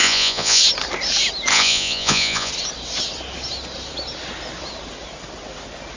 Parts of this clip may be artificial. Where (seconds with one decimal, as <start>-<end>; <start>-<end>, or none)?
0.0-0.6; 1.5-2.5